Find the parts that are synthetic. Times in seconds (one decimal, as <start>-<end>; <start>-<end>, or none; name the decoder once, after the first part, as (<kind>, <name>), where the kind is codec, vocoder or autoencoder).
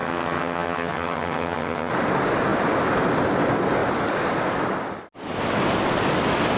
0.0-1.9 (vocoder, HiFi-GAN)